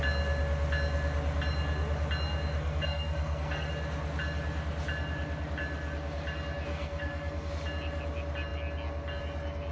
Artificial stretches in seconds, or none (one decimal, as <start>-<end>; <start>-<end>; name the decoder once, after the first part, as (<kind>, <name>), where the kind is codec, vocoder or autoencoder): 2.6-3.7 (codec, SNAC); 6.7-7.5